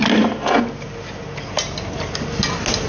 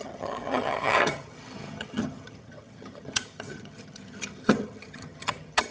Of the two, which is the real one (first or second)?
first